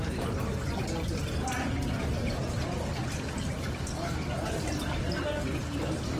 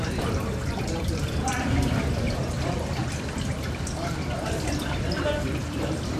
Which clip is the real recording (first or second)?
first